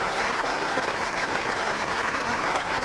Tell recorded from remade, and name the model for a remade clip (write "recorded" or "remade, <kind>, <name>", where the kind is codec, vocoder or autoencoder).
remade, codec, SNAC